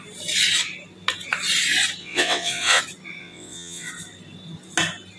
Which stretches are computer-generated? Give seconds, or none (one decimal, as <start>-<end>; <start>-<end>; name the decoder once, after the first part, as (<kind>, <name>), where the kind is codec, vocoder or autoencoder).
2.0-2.8 (vocoder, WaveNeXt); 3.2-3.9